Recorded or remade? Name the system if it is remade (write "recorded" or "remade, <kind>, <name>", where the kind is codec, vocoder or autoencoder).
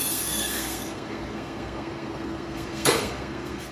remade, codec, SNAC